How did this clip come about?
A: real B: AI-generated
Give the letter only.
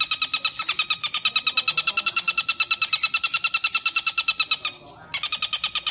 A